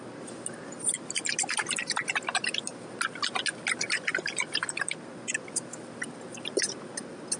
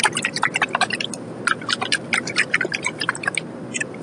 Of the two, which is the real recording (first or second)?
first